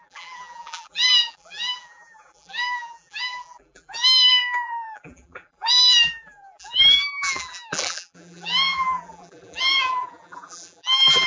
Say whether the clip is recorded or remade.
remade